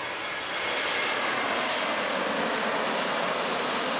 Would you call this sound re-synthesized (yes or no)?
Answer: no